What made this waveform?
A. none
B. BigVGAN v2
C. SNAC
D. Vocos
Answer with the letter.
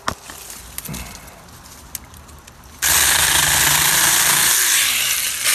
A